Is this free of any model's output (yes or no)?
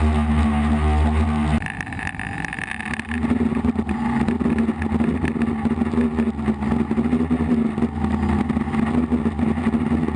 yes